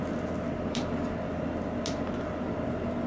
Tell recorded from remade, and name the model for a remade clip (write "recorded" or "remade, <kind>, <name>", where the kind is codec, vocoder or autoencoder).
recorded